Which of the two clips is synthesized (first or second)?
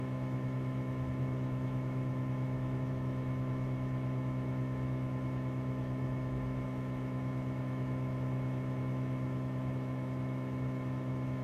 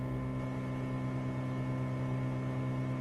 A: first